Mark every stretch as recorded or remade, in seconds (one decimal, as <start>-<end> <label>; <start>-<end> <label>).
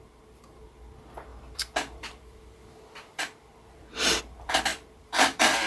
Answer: 0.0-1.3 recorded; 1.3-4.2 remade; 4.2-4.7 recorded; 4.7-5.7 remade